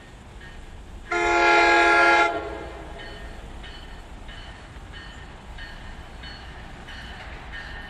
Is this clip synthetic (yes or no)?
no